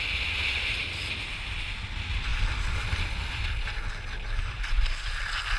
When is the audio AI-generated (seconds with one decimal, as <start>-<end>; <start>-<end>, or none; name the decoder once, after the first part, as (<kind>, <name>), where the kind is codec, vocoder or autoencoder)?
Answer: none